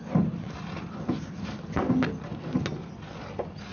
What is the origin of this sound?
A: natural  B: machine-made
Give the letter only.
A